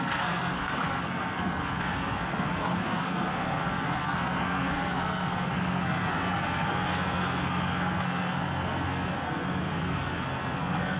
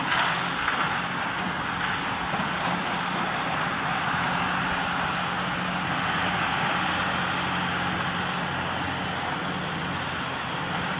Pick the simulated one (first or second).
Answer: first